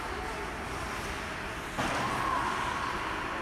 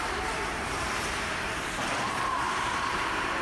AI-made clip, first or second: second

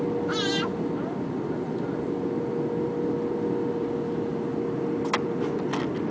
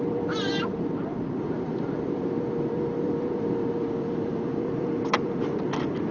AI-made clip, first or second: second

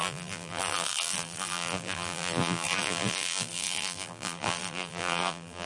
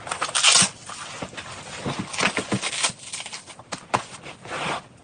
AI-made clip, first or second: first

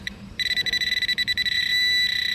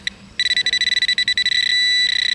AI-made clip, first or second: first